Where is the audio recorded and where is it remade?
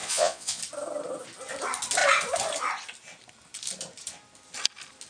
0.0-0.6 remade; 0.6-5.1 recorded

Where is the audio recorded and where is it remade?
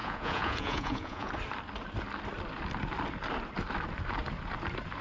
0.0-1.3 remade; 1.3-5.0 recorded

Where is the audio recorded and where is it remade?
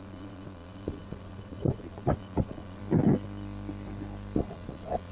0.0-2.8 remade; 2.8-4.4 recorded; 4.4-5.1 remade